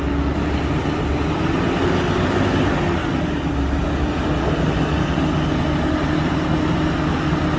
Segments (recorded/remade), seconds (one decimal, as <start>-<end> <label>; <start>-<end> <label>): 0.0-7.6 recorded